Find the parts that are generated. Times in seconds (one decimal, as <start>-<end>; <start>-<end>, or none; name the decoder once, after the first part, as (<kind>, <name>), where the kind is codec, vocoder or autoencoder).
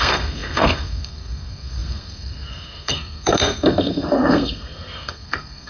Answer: 0.0-5.7 (codec, SNAC)